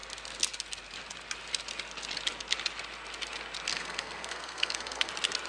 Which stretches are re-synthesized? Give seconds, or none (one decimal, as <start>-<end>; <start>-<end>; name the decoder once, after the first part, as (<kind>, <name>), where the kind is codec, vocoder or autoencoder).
3.7-5.1 (codec, SNAC)